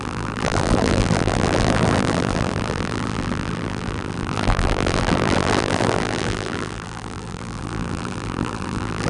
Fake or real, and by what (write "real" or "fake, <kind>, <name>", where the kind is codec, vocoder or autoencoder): fake, vocoder, BigVGAN v2